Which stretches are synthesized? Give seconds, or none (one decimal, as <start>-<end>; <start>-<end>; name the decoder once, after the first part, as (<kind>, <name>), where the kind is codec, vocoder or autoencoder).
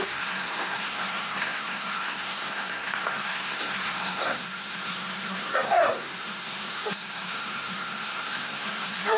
0.0-9.2 (codec, SNAC)